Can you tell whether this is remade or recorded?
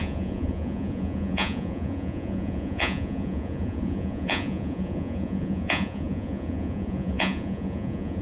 remade